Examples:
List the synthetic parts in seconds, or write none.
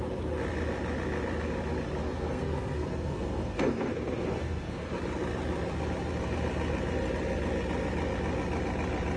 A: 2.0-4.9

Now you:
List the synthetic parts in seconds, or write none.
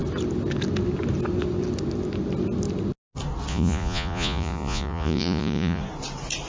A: 3.5-5.8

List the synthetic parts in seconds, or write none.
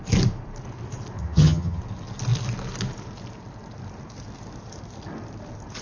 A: 1.2-1.8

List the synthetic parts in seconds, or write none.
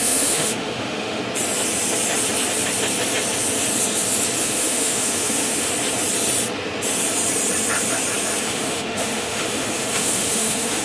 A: 0.0-1.2; 4.4-5.7; 8.4-10.8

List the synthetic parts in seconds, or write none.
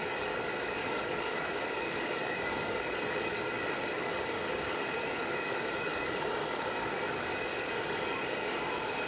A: 0.0-9.1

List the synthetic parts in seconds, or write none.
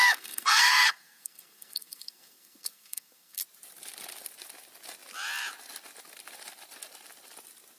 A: 0.0-3.4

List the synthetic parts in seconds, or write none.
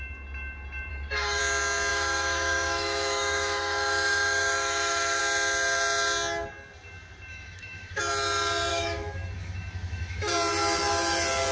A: 0.9-1.4; 1.9-5.2; 7.3-8.0; 8.7-10.3